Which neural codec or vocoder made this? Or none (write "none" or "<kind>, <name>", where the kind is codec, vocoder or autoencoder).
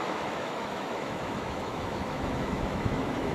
autoencoder, DAC-VAE